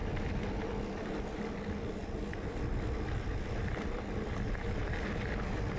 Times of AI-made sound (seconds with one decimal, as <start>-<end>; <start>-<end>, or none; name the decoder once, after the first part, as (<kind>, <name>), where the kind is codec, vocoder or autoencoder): none